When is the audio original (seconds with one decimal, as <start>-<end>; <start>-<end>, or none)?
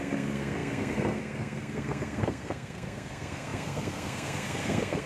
none